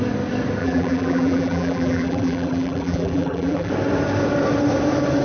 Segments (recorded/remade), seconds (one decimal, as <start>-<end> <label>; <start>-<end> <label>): 0.0-0.6 recorded; 0.6-3.7 remade; 3.7-5.2 recorded